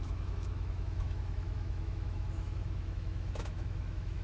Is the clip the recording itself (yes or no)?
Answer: no